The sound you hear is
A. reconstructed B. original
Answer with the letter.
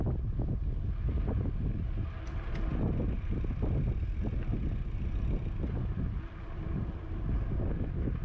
B